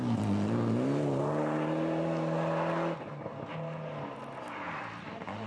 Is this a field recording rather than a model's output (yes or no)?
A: yes